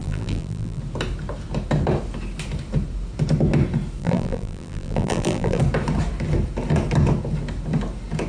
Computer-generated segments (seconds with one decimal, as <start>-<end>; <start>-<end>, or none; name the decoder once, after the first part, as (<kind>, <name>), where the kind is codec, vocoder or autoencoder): 0.0-0.8 (vocoder, BigVGAN v2); 4.0-5.6